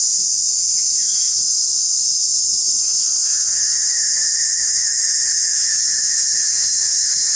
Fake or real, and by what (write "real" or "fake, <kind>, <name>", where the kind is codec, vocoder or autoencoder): fake, autoencoder, DAC-VAE